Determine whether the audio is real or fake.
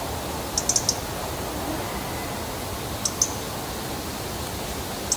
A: real